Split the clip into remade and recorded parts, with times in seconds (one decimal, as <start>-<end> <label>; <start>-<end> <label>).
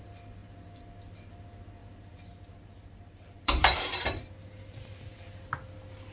0.0-0.4 recorded; 0.4-0.9 remade; 0.9-1.8 recorded; 1.8-5.5 remade; 5.5-6.1 recorded